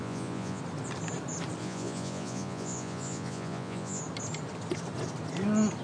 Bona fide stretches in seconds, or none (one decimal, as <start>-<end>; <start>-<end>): 0.6-1.6; 4.0-5.8